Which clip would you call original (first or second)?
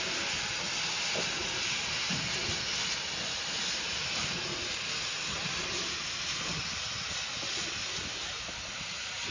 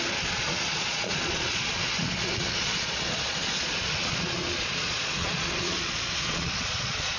first